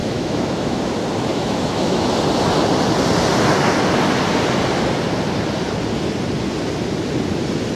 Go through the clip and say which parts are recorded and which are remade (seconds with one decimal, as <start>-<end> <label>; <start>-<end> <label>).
0.0-0.8 remade; 0.8-1.3 recorded; 1.3-2.1 remade; 2.1-7.8 recorded